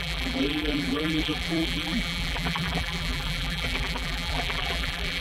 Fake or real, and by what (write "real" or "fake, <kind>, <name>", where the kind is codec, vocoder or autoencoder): fake, vocoder, BigVGAN v2